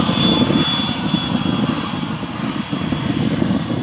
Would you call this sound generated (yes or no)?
no